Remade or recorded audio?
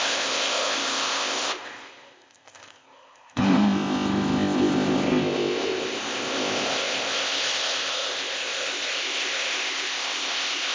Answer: remade